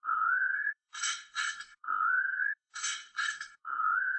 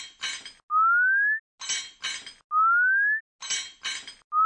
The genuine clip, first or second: second